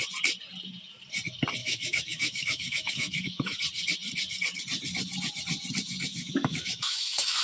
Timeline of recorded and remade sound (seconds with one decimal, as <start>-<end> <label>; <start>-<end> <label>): 0.0-1.6 recorded; 1.6-3.6 remade; 3.6-6.1 recorded; 6.1-7.4 remade